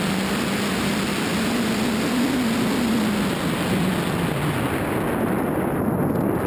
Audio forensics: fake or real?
real